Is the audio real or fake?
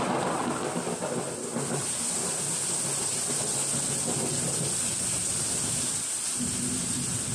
real